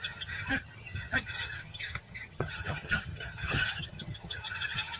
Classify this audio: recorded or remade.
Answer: remade